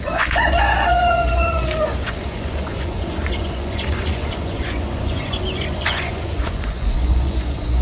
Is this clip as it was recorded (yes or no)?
no